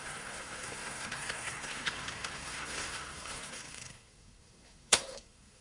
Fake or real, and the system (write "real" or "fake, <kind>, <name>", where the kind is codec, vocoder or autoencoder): fake, codec, SNAC